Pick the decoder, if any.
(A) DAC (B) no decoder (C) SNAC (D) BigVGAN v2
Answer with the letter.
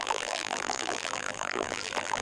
D